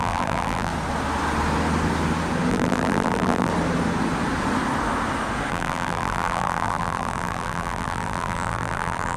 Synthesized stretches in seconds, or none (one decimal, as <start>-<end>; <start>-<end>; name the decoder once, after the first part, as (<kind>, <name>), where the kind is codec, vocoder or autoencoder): 0.0-0.7 (vocoder, BigVGAN v2); 2.5-3.5; 5.5-9.2